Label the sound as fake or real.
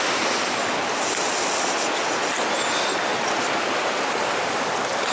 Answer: real